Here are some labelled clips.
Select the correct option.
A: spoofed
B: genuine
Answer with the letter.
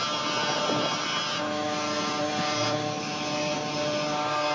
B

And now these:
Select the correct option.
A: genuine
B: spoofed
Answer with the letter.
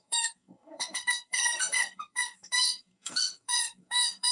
B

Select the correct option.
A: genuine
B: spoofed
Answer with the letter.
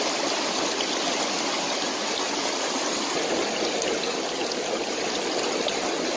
A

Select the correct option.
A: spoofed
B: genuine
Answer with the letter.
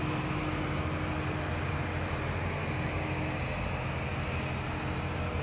B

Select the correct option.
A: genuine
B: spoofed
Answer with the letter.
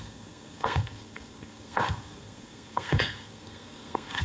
B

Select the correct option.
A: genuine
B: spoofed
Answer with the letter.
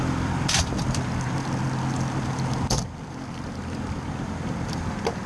A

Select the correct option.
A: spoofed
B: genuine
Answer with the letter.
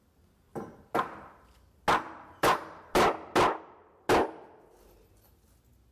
B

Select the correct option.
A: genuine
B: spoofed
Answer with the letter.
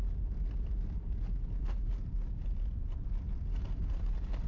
A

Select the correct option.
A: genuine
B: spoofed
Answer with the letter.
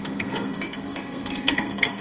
B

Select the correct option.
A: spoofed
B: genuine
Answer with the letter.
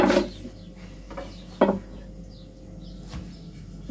B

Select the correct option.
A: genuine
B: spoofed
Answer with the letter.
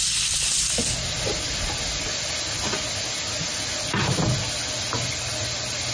A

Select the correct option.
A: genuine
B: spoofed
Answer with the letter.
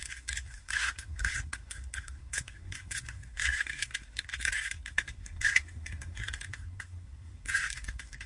B